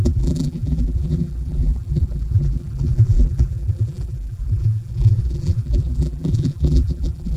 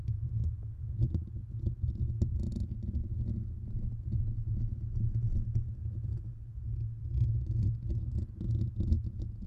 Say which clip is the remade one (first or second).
first